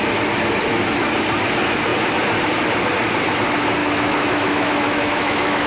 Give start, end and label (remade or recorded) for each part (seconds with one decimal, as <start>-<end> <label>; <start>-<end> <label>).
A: 0.0-3.8 recorded; 3.8-5.7 remade